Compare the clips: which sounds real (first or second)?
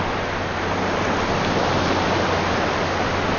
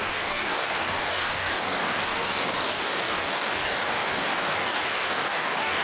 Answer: first